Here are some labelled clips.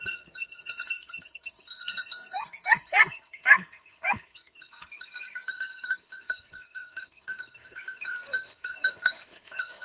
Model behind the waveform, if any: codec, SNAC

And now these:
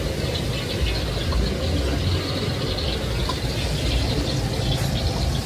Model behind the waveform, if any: none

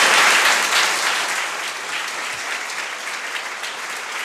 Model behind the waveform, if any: none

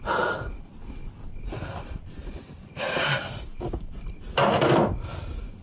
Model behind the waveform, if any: none